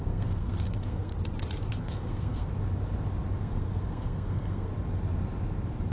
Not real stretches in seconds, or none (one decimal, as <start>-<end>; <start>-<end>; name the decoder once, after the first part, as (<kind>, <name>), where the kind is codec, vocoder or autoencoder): 0.0-1.1 (codec, SNAC); 1.7-2.5; 3.4-4.7

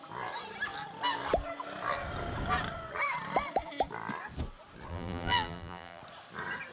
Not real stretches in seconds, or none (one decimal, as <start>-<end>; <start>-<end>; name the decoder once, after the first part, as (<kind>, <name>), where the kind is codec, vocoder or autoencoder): 4.9-6.0 (vocoder, BigVGAN v2)

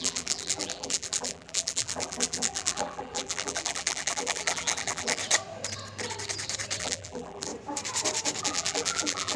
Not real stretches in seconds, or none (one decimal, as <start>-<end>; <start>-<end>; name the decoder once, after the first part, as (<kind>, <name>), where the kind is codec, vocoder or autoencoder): 0.0-5.2 (vocoder, BigVGAN v2); 6.8-7.5; 8.4-9.4

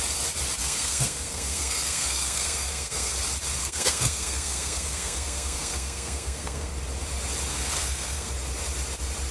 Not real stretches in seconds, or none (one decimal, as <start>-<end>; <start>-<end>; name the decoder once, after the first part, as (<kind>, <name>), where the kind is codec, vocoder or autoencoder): 0.6-3.1 (codec, SNAC); 3.6-6.7; 7.5-8.3

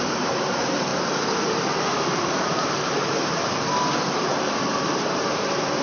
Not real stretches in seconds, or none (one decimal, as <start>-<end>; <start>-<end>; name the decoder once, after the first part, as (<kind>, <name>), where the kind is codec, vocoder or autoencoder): 0.0-5.8 (vocoder, BigVGAN v2)